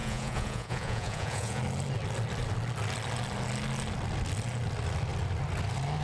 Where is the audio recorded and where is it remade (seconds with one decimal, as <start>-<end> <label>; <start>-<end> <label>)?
0.0-1.6 remade; 1.6-6.0 recorded